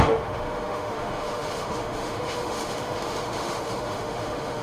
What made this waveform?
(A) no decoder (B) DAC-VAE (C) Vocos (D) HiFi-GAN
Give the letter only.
B